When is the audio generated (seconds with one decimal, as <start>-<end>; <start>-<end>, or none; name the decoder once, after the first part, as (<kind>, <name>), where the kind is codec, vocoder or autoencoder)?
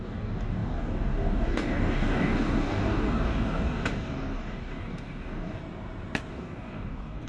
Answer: 0.0-5.6 (codec, DAC); 6.3-7.3